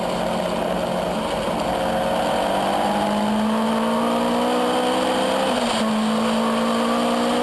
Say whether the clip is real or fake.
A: real